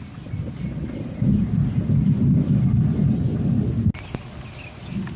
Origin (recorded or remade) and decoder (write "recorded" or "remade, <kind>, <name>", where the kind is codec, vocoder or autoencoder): recorded